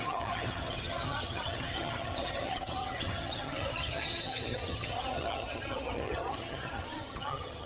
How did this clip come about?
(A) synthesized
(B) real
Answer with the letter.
A